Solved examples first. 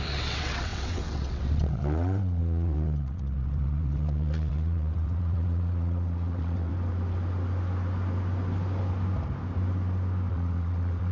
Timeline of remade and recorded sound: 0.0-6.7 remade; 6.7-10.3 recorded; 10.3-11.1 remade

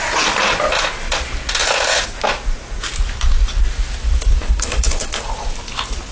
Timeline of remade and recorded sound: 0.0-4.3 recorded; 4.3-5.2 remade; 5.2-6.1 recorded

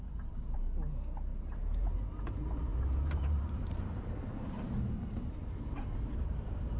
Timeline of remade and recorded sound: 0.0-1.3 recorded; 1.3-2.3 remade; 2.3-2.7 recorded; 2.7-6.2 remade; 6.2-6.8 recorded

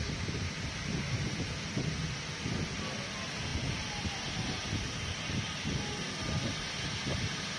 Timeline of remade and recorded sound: 0.0-7.6 recorded